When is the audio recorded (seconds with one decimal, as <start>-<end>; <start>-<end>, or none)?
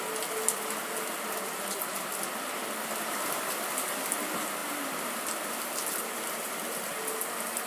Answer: 0.0-4.6; 6.5-7.7